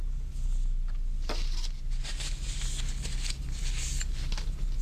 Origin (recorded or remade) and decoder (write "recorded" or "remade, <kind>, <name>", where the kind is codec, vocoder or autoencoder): recorded